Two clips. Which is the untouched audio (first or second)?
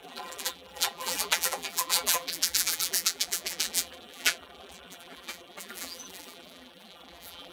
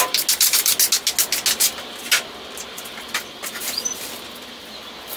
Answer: second